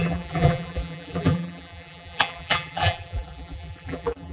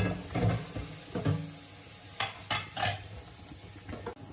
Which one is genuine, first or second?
second